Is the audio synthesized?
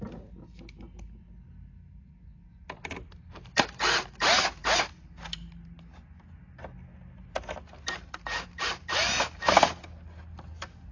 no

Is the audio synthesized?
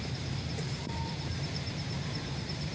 yes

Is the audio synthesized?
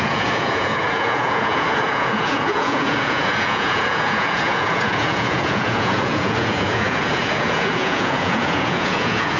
yes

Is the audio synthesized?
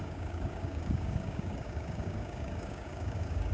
yes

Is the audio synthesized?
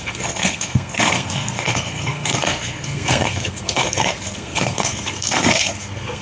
yes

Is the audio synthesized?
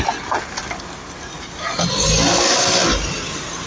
no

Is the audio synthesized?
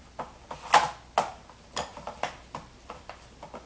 no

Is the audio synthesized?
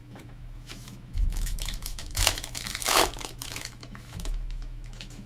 yes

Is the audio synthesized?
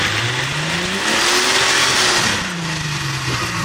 no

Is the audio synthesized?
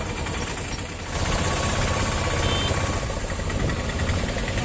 no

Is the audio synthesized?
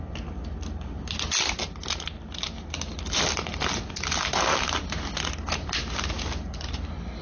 no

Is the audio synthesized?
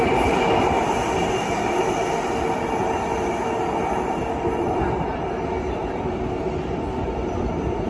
no